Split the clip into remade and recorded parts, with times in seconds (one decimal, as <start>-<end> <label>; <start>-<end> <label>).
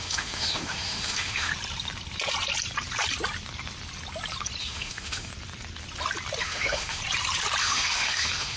0.0-1.5 remade; 1.5-4.6 recorded; 4.6-5.3 remade; 5.3-6.4 recorded; 6.4-7.0 remade; 7.0-7.6 recorded; 7.6-8.6 remade